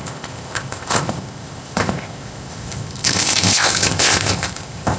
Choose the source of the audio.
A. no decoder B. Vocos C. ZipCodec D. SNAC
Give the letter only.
C